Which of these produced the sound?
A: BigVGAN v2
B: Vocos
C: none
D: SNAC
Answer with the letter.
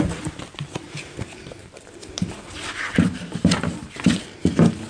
C